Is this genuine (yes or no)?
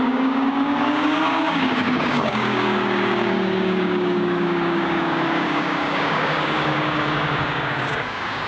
no